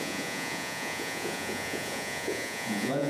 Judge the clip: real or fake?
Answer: fake